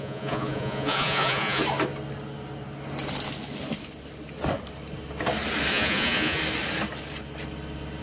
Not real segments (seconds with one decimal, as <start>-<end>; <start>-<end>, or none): 0.0-1.6; 5.7-6.4